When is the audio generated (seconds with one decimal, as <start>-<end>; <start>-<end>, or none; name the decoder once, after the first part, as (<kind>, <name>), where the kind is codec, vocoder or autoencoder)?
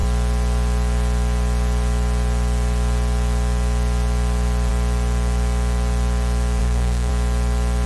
6.6-7.1 (codec, SNAC)